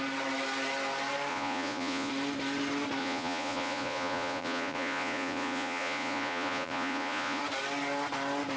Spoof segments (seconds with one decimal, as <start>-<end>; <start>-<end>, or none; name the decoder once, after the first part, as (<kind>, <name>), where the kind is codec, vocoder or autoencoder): 1.3-2.1 (vocoder, Vocos); 3.0-7.4